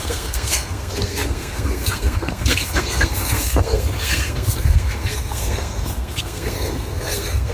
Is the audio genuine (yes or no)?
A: no